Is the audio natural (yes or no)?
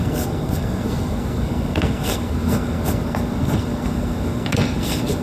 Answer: no